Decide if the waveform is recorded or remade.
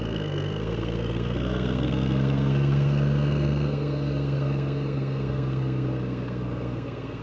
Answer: remade